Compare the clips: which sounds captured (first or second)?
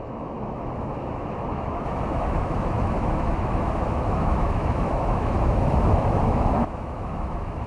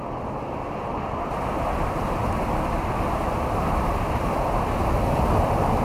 second